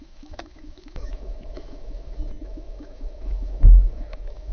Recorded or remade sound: remade